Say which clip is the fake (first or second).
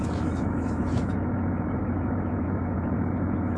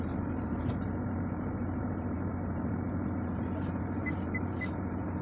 first